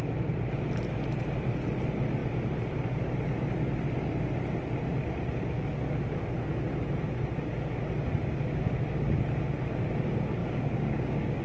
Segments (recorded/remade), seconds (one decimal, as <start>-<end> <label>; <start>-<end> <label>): 0.0-10.4 recorded; 10.4-11.4 remade